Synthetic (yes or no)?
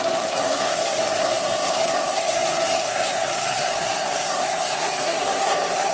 yes